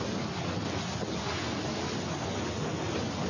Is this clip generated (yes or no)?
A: no